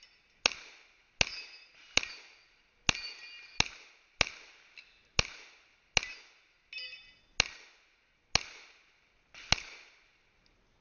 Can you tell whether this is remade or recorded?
recorded